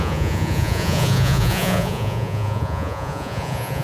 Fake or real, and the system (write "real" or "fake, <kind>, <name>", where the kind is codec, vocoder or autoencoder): fake, vocoder, Vocos